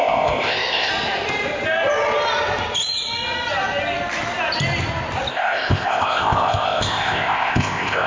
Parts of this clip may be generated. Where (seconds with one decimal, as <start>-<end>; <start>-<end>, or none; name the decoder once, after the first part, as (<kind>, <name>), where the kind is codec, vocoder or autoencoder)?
0.0-0.9 (codec, ZipCodec); 5.3-8.1